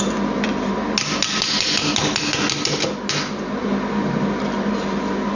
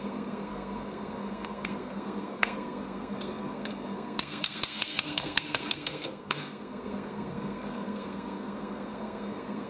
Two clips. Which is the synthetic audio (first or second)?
second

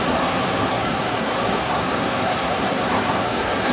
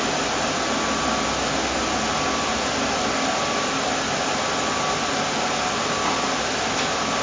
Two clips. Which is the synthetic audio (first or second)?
first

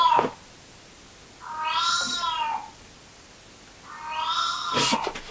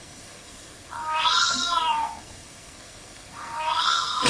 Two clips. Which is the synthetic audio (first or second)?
second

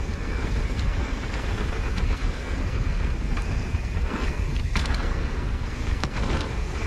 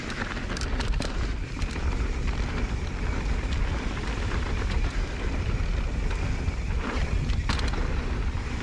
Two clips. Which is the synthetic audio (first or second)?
first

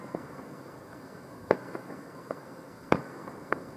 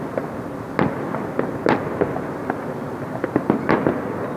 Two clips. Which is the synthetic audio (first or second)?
first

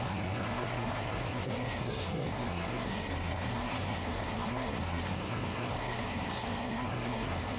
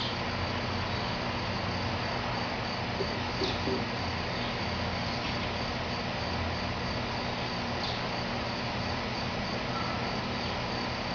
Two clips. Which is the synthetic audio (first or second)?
first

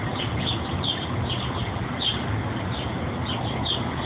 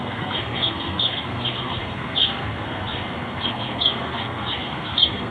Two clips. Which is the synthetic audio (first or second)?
second